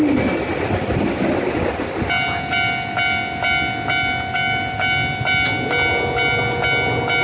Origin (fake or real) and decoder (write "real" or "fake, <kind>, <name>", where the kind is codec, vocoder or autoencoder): real